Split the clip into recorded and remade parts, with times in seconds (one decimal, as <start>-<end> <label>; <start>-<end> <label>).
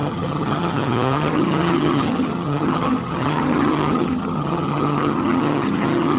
0.0-6.2 remade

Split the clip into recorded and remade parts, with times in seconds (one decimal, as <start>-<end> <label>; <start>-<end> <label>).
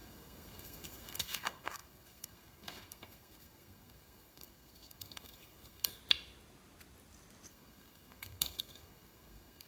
0.0-6.0 remade; 6.0-7.5 recorded; 7.5-9.7 remade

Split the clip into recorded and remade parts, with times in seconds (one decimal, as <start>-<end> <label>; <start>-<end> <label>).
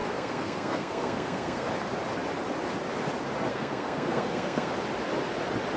0.0-1.7 remade; 1.7-3.5 recorded; 3.5-4.7 remade; 4.7-5.8 recorded